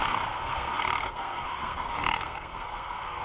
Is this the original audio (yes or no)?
no